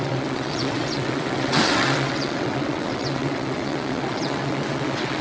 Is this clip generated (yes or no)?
yes